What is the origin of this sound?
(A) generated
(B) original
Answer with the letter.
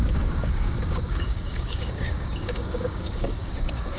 A